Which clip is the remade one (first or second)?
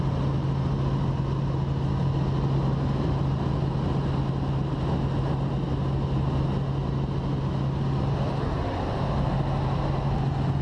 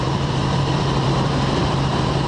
second